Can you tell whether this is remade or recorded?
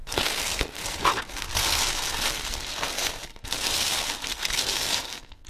remade